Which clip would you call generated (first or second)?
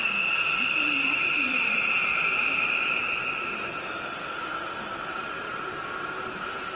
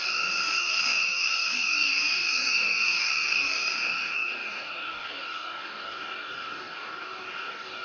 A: second